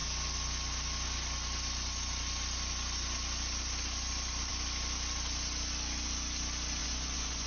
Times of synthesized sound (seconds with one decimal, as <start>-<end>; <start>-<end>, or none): 6.8-7.5